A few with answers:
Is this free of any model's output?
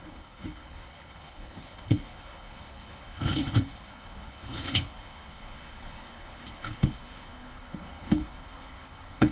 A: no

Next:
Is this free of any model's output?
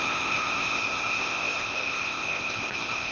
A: no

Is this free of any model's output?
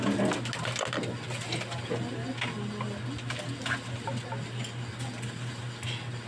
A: yes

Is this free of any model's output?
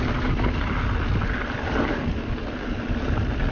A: yes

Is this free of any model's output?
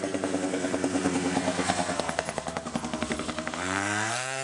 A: no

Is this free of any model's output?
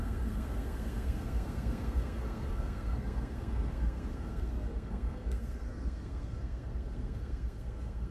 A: no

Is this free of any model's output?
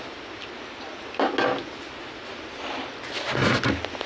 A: yes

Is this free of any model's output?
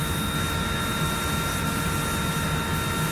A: yes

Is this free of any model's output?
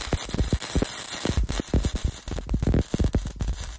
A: yes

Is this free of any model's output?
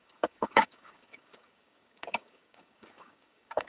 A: no